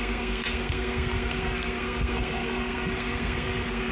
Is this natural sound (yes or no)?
no